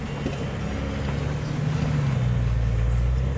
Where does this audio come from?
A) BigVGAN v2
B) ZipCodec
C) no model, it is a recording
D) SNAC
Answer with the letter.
C